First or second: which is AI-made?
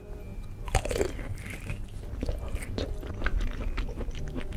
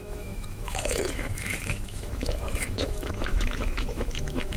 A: second